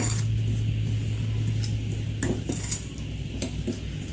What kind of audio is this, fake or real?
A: real